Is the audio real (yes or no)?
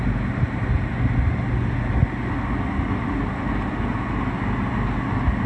yes